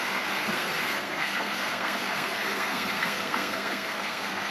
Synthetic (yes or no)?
yes